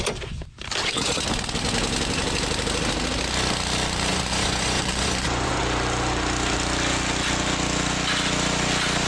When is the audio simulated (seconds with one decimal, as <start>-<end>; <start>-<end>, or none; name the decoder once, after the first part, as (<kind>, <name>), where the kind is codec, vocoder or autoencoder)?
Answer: 4.1-5.6 (vocoder, Vocos)